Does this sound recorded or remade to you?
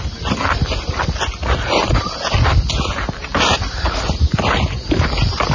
recorded